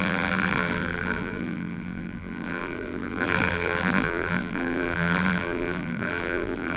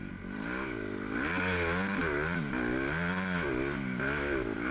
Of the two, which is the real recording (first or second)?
second